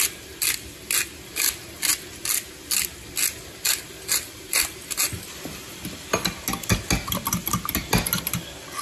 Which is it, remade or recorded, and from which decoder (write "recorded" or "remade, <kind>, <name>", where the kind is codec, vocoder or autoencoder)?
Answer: recorded